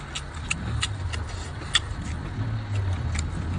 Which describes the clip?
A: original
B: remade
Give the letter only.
A